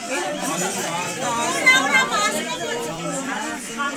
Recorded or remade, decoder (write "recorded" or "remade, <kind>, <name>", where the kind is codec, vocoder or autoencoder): remade, vocoder, BigVGAN v2